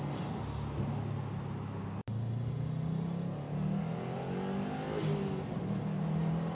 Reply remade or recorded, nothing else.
recorded